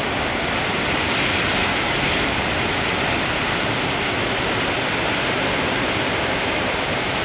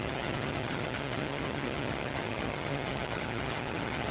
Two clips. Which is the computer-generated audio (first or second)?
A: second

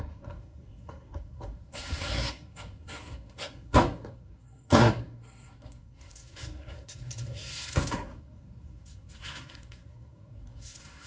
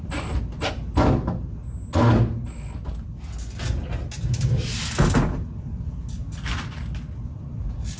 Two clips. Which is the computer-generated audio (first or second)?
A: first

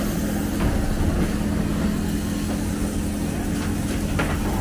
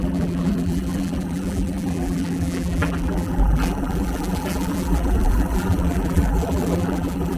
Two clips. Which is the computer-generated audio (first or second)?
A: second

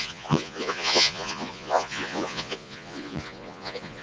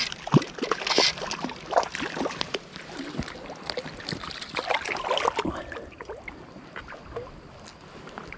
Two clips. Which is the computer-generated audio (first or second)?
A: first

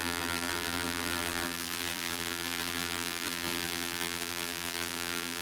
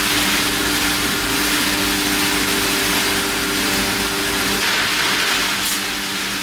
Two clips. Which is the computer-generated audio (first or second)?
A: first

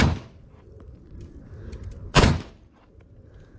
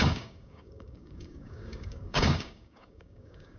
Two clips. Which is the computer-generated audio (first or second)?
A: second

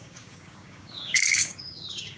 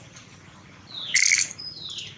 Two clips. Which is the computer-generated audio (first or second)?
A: first